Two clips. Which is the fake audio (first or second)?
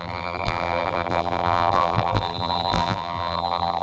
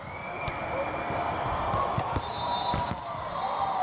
first